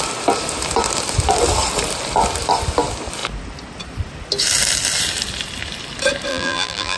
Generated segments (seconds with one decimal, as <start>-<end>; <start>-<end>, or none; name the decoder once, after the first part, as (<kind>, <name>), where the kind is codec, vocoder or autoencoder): 6.3-7.0 (vocoder, BigVGAN v2)